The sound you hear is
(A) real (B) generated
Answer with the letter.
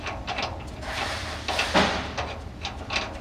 A